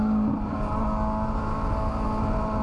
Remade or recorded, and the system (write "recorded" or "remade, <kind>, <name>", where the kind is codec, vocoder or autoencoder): recorded